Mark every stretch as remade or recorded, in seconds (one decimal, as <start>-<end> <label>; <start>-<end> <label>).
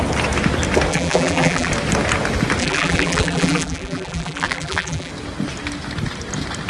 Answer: 0.0-0.9 recorded; 0.9-1.7 remade; 1.7-2.6 recorded; 2.6-5.1 remade; 5.1-6.7 recorded